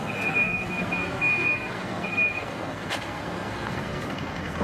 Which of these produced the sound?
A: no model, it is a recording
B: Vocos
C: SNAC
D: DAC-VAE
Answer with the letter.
C